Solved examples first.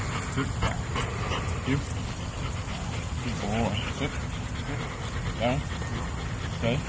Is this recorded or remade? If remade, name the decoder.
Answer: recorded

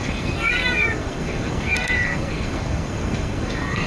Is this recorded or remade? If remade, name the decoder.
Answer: remade, codec, SNAC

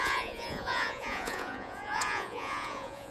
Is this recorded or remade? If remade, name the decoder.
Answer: remade, vocoder, Vocos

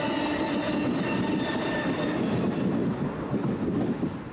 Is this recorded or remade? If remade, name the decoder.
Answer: recorded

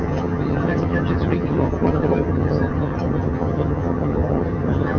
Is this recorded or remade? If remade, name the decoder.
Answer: remade, vocoder, HiFi-GAN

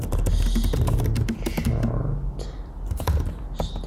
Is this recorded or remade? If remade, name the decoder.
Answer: recorded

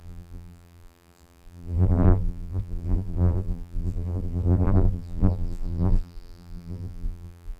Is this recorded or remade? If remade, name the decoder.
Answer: remade, vocoder, BigVGAN v2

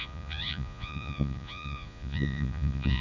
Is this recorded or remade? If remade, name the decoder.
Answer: remade, vocoder, Vocos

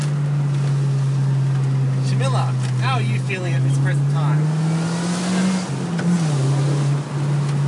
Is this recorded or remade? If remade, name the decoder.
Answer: recorded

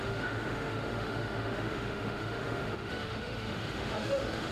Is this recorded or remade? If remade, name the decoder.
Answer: remade, autoencoder, DAC-VAE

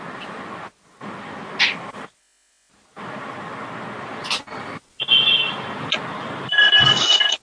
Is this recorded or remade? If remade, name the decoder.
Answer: recorded